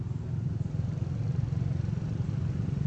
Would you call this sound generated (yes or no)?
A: no